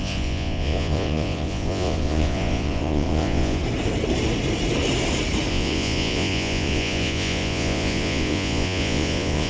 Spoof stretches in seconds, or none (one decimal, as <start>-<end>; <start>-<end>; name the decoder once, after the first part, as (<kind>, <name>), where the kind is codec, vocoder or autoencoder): 0.0-3.6 (vocoder, Vocos); 5.5-9.5